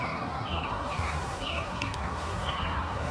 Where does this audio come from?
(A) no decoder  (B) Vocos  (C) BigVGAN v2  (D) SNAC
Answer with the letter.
D